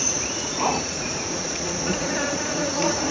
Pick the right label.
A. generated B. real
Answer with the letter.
A